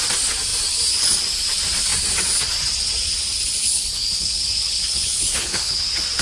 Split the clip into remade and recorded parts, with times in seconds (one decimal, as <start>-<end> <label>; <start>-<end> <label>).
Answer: 0.0-3.6 recorded; 3.6-5.8 remade; 5.8-6.2 recorded